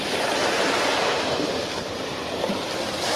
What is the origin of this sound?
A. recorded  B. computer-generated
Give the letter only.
A